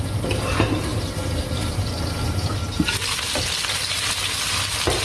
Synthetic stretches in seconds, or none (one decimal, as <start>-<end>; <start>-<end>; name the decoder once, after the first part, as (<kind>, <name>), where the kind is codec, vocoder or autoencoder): none